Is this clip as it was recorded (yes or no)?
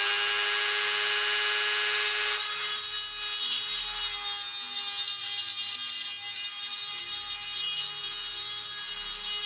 yes